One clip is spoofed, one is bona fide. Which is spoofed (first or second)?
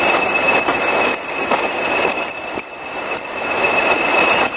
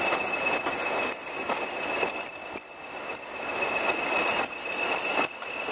first